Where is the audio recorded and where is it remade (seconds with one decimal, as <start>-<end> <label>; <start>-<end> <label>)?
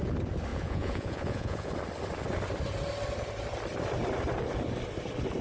0.0-0.5 recorded; 0.5-1.7 remade; 1.7-5.4 recorded